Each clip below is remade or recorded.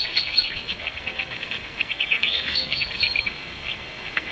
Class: remade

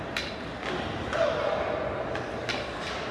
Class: recorded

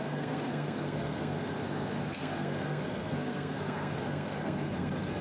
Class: remade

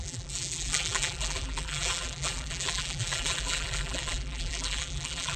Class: remade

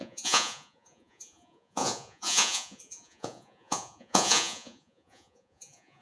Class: remade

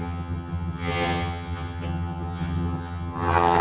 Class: remade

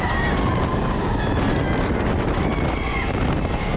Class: recorded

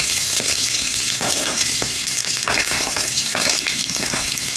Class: remade